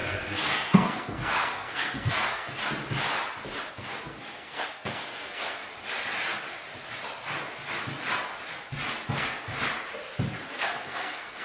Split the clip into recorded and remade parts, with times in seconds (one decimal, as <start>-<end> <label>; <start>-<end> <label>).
0.0-2.6 remade; 2.6-3.7 recorded; 3.7-5.6 remade; 5.6-9.1 recorded; 9.1-9.5 remade; 9.5-10.5 recorded; 10.5-11.4 remade